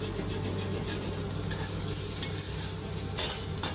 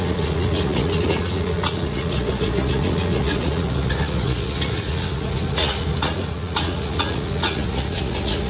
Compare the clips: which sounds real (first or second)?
first